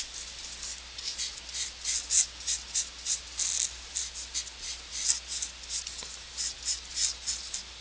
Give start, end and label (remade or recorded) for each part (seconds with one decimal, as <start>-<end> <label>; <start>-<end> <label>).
0.0-7.8 recorded